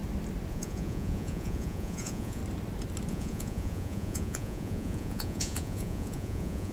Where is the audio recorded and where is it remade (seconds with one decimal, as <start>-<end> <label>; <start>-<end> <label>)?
0.0-0.5 recorded; 0.5-2.4 remade; 2.4-3.1 recorded; 3.1-6.7 remade